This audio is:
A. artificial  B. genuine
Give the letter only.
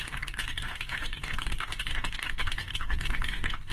A